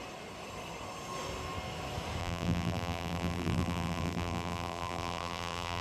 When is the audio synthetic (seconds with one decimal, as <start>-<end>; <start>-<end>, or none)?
2.2-5.8